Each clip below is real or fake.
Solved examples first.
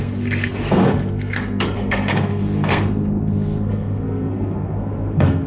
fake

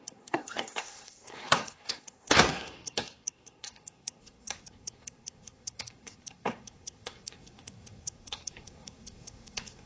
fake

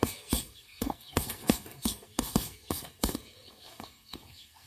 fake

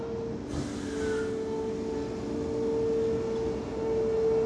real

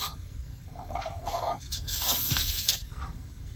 fake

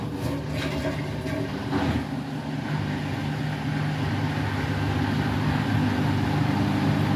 real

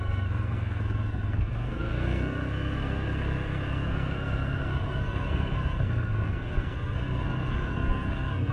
fake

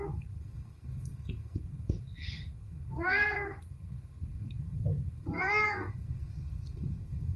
fake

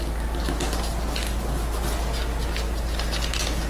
real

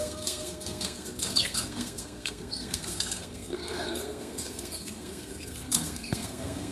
fake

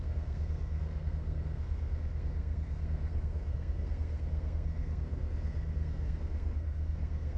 fake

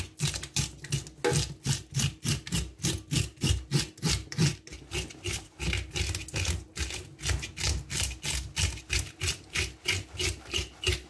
real